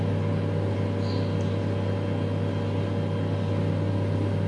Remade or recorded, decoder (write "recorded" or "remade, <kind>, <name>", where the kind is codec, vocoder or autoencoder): recorded